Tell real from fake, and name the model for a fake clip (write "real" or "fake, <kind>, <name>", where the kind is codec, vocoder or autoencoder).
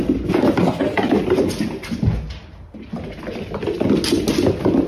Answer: real